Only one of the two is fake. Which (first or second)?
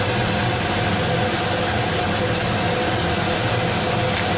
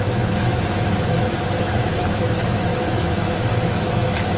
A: second